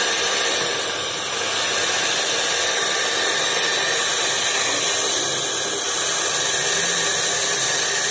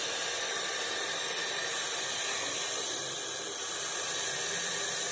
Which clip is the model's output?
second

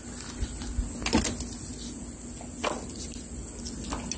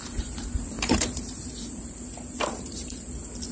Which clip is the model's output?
second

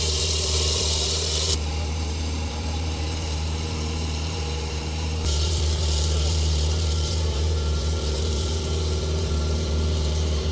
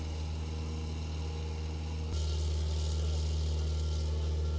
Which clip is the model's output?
first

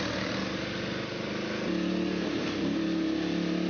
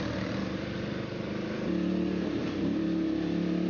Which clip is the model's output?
second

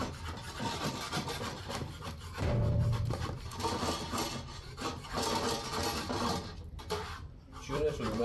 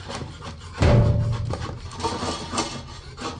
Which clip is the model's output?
first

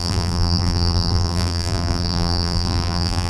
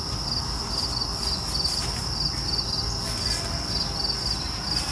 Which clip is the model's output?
first